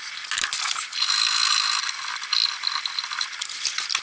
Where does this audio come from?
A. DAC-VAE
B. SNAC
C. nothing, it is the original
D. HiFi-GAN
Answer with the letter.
C